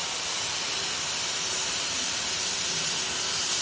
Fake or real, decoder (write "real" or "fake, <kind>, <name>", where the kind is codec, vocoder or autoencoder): real